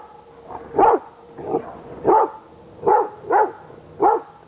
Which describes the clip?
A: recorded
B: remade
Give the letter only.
A